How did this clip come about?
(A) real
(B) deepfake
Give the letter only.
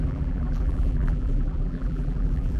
B